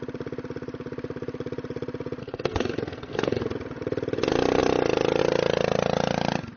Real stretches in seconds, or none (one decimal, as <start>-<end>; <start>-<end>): 0.0-2.2; 3.4-6.6